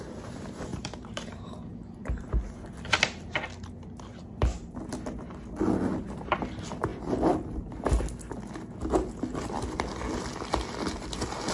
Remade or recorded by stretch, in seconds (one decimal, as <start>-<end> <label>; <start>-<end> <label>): 0.0-0.7 recorded; 0.7-2.2 remade; 2.2-4.1 recorded; 4.1-4.8 remade; 4.8-11.5 recorded